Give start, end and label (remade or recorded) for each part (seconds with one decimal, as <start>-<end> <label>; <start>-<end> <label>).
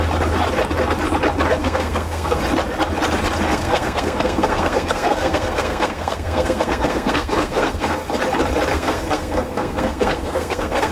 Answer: 0.0-1.6 recorded; 1.6-2.4 remade; 2.4-3.5 recorded; 3.5-8.0 remade; 8.0-8.7 recorded; 8.7-10.9 remade